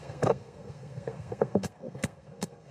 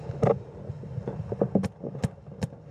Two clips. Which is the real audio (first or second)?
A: second